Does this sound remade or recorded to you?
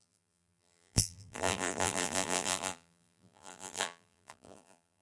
remade